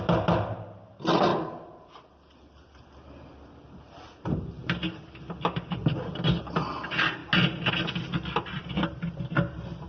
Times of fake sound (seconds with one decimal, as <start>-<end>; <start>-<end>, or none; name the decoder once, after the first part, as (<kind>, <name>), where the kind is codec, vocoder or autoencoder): none